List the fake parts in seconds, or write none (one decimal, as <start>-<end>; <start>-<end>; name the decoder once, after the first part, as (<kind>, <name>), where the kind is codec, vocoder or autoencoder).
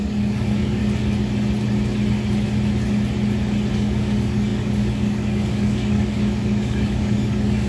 0.0-0.8 (codec, DAC); 3.7-7.7